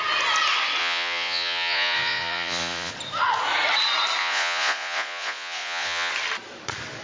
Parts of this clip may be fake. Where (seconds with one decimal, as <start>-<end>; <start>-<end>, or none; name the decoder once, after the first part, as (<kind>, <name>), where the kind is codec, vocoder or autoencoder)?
0.8-2.9 (vocoder, Vocos); 4.2-6.1